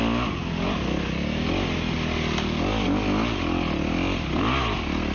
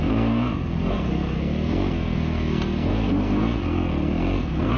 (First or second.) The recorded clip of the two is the first